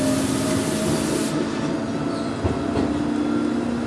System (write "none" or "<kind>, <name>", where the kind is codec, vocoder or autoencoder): none